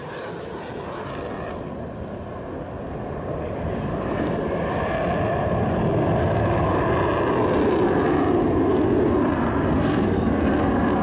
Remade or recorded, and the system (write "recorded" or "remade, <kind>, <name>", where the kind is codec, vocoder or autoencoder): recorded